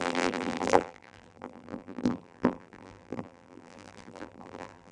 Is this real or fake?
fake